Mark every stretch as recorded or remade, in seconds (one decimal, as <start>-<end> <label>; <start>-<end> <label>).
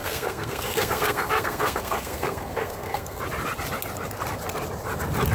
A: 0.0-3.2 remade; 3.2-5.3 recorded